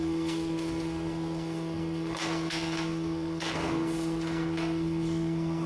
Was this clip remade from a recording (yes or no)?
yes